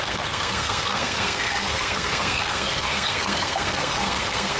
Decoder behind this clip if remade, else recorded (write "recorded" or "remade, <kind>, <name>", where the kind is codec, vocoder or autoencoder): remade, codec, SNAC